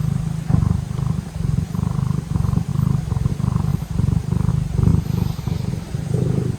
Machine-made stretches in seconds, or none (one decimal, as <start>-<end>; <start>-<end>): 0.0-4.9; 5.7-6.6